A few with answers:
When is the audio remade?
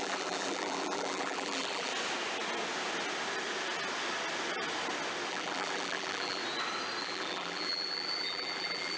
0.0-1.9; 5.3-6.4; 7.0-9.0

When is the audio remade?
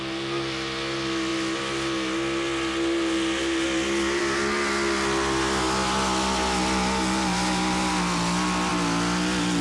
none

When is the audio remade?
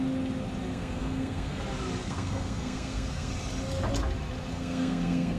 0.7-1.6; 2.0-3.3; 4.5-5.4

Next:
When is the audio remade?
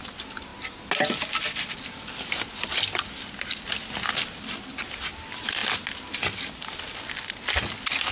none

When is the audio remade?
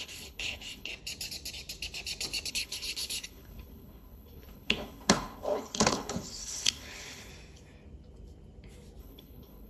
0.0-0.9; 2.5-7.3; 9.0-9.7